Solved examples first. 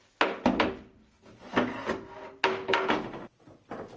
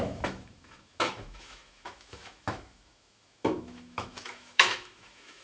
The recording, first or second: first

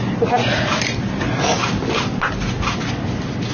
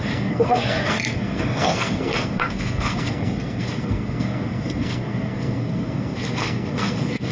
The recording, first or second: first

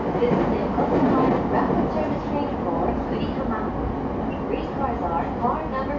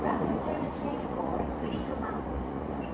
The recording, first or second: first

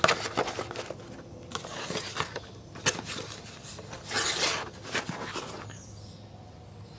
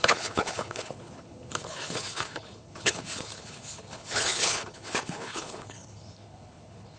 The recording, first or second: first